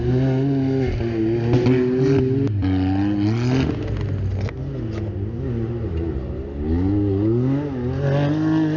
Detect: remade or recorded recorded